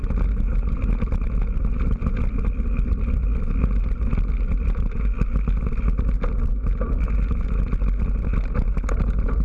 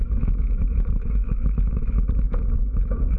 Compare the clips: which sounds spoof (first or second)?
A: second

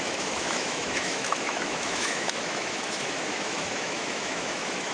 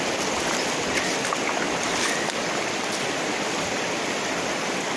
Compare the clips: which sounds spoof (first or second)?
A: first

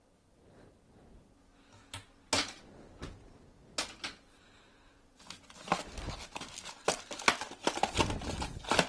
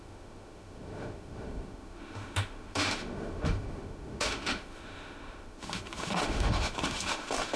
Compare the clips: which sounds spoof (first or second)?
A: second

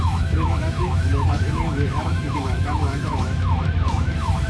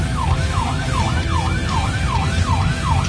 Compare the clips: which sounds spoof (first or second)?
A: first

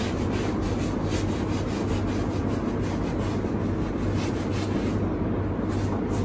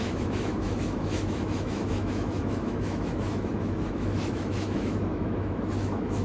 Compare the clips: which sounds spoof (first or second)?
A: second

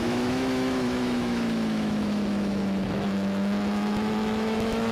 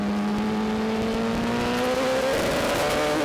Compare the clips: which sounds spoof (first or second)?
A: first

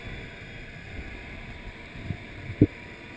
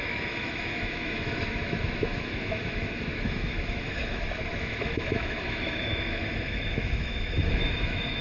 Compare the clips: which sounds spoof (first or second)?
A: second